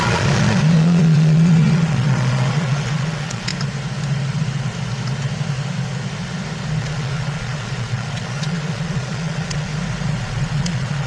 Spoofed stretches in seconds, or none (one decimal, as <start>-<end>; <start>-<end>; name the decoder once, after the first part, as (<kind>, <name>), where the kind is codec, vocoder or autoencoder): 0.0-3.5 (vocoder, Vocos); 6.8-9.7; 10.2-11.1